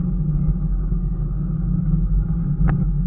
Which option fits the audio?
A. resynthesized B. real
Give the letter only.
B